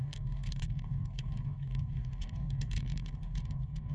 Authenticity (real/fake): fake